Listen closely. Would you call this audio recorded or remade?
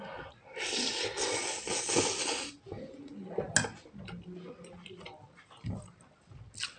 recorded